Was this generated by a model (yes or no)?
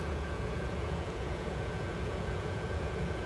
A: yes